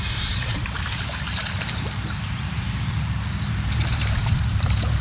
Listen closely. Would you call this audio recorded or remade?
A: remade